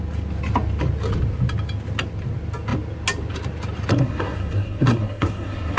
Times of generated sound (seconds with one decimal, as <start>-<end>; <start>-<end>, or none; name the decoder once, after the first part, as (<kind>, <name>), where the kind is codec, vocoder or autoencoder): 3.9-5.8 (codec, SNAC)